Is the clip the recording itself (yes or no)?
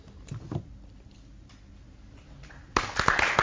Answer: yes